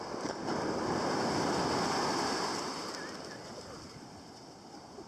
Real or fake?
real